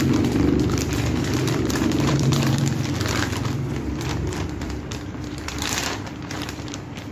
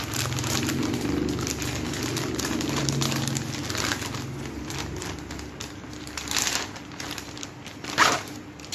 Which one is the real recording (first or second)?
second